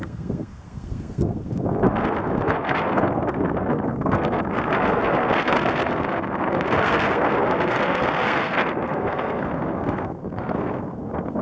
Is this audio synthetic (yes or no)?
yes